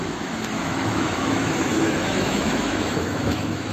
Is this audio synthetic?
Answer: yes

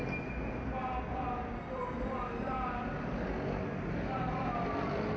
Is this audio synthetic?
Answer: no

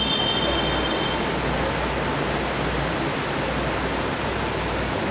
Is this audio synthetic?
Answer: no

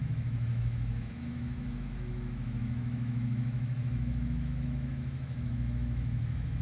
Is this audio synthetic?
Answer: yes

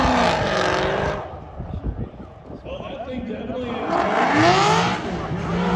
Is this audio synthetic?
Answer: no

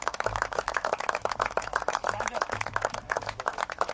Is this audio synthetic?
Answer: yes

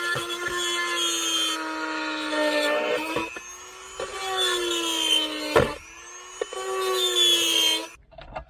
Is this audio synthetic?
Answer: no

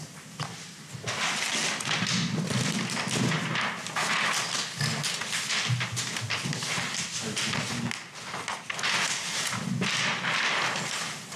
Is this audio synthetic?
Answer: no